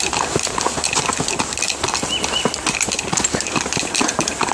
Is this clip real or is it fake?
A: real